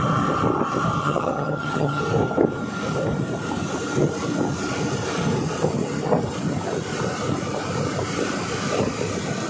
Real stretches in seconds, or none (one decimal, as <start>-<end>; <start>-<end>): 0.0-1.0; 2.0-9.5